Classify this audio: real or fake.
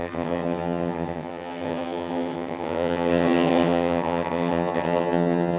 fake